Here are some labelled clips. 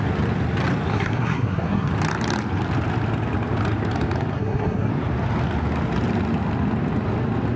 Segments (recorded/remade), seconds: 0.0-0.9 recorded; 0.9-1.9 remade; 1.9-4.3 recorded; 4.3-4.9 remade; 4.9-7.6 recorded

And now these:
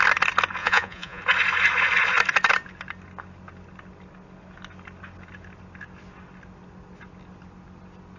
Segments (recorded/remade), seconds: 0.0-0.6 recorded; 0.6-1.2 remade; 1.2-8.2 recorded

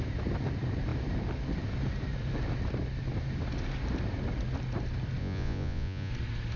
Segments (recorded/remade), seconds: 0.0-5.2 recorded; 5.2-6.1 remade; 6.1-6.6 recorded

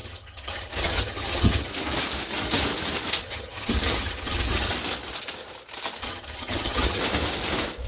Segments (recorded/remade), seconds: 0.0-1.7 remade; 1.7-3.2 recorded; 3.2-4.7 remade; 4.7-6.0 recorded; 6.0-7.0 remade; 7.0-7.9 recorded

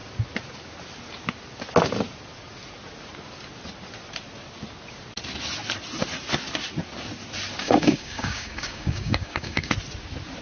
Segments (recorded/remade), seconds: 0.0-7.6 recorded; 7.6-9.7 remade; 9.7-10.4 recorded